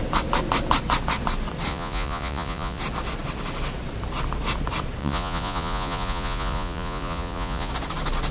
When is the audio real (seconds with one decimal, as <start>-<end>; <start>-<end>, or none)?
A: 0.0-1.7; 2.8-5.0; 7.7-8.3